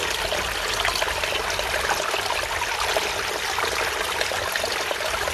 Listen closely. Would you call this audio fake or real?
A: real